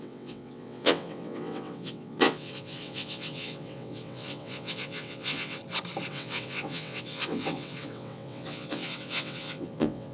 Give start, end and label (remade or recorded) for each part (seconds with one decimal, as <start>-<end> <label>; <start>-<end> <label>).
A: 0.0-5.6 remade; 5.6-6.1 recorded; 6.1-10.1 remade